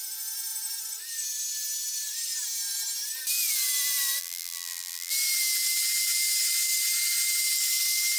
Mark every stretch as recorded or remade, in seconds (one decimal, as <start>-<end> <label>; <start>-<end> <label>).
0.0-4.2 recorded; 4.2-5.1 remade; 5.1-8.2 recorded